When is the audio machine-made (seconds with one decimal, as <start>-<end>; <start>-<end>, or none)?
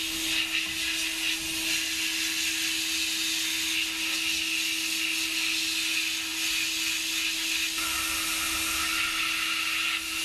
none